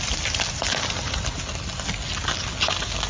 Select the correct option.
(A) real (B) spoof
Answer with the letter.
A